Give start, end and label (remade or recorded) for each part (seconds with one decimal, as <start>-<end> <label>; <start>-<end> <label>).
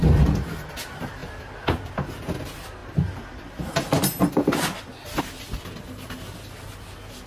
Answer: 0.0-7.3 recorded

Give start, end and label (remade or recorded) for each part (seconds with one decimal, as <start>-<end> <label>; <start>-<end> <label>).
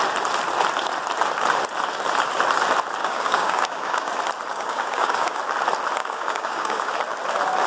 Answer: 0.0-3.0 recorded; 3.0-4.1 remade; 4.1-4.5 recorded; 4.5-5.4 remade; 5.4-6.0 recorded; 6.0-6.9 remade; 6.9-7.7 recorded